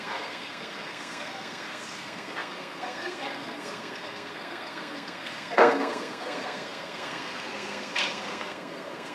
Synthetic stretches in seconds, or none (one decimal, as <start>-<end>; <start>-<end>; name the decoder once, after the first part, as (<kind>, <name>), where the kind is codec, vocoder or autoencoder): 0.0-9.1 (codec, SNAC)